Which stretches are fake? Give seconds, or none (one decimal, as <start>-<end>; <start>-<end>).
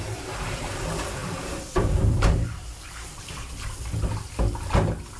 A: 1.2-3.9